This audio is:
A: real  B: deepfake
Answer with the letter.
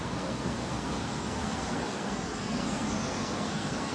B